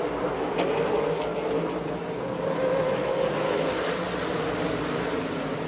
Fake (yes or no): no